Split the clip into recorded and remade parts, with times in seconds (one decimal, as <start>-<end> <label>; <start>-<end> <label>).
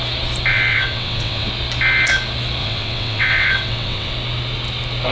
0.0-0.5 recorded; 0.5-1.5 remade; 1.5-2.6 recorded; 2.6-4.1 remade; 4.1-5.1 recorded